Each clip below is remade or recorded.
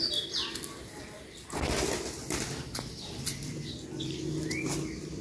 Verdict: recorded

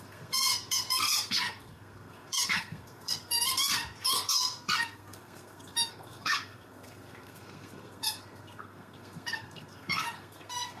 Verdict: remade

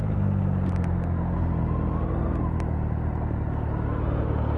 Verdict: recorded